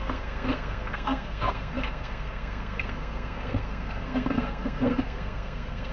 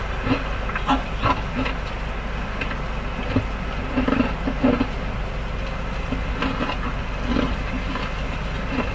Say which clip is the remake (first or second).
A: first